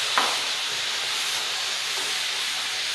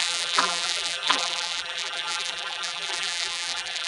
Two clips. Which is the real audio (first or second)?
first